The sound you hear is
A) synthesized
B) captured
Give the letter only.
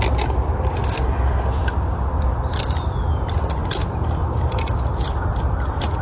B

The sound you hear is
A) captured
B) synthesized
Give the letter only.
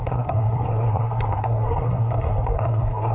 B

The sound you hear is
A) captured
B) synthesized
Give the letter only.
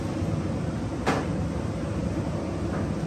A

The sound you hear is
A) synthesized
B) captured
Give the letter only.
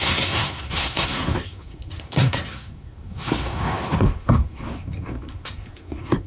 A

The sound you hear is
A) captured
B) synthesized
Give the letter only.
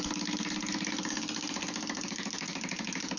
A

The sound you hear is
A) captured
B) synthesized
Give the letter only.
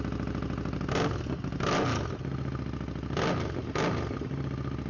A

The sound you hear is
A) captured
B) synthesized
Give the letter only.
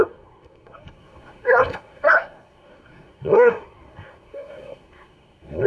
B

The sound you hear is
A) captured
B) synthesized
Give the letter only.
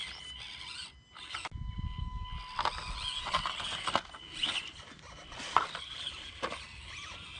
A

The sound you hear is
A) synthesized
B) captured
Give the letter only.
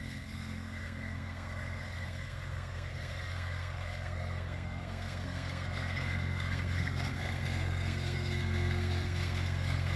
A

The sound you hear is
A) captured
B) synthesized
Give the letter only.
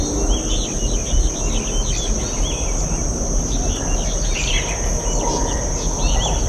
A